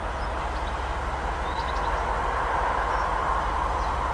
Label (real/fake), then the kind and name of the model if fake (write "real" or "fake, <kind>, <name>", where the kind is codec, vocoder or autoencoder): real